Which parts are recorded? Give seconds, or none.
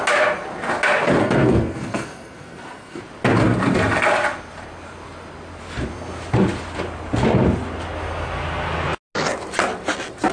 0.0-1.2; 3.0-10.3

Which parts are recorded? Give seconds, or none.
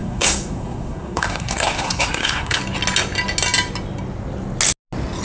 2.6-5.2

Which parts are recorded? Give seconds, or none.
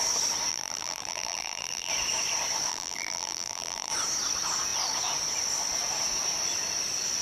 0.0-0.5; 1.9-2.7; 3.9-7.2